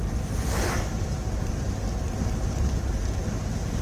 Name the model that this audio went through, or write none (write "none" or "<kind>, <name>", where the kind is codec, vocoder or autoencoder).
none